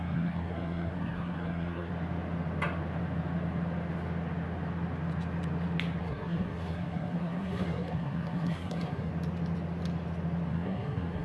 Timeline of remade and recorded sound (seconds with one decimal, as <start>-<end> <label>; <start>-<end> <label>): 0.0-1.9 remade; 1.9-6.0 recorded; 6.0-9.1 remade; 9.1-10.5 recorded; 10.5-11.2 remade